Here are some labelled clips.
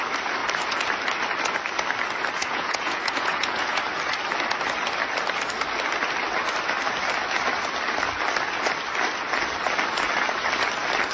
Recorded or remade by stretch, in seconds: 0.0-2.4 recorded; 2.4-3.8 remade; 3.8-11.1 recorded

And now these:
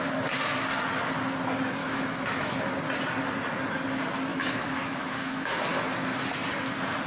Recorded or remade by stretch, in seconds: 0.0-1.8 recorded; 1.8-2.7 remade; 2.7-4.3 recorded; 4.3-5.6 remade; 5.6-7.1 recorded

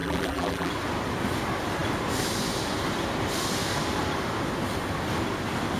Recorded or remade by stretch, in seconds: 0.0-0.7 remade; 0.7-5.8 recorded

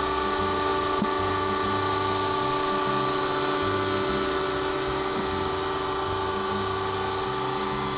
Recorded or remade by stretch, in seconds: 0.0-8.0 recorded